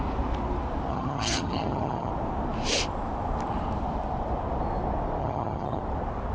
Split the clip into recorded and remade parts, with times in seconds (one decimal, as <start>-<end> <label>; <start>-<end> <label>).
0.0-0.9 recorded; 0.9-2.1 remade; 2.1-5.2 recorded; 5.2-5.8 remade; 5.8-6.3 recorded